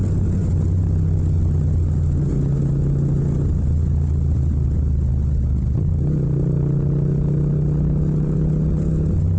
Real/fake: real